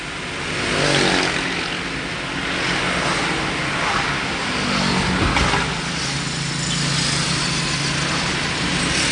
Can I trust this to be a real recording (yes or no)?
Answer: yes